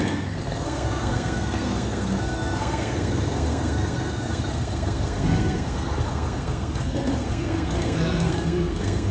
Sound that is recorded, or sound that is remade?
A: remade